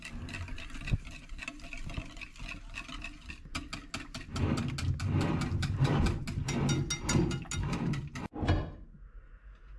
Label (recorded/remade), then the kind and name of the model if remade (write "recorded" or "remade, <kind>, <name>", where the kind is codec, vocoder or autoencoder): recorded